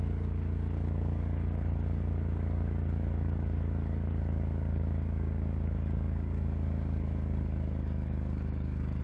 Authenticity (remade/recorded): remade